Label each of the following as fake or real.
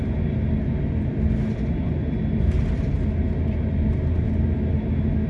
real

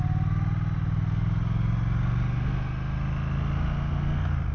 real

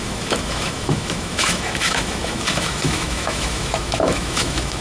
fake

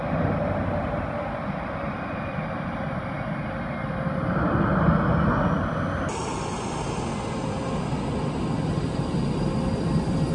real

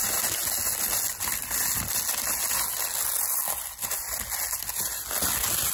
real